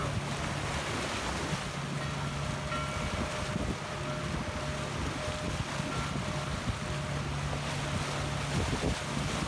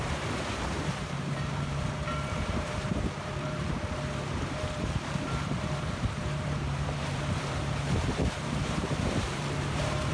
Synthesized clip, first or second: second